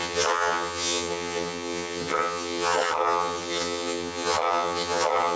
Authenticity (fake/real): fake